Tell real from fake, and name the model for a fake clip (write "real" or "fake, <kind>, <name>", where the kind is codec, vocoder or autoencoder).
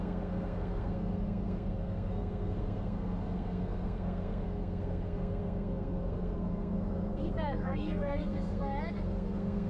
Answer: fake, codec, SNAC